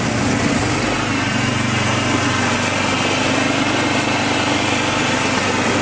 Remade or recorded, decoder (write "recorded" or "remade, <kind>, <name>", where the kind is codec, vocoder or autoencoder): recorded